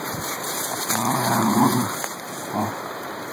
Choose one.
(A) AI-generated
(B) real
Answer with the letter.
A